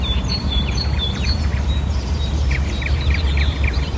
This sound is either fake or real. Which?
fake